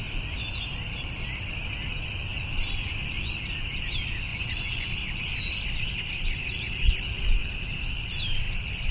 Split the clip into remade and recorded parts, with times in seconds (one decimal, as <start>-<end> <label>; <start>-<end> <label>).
0.0-4.3 recorded; 4.3-4.9 remade; 4.9-8.9 recorded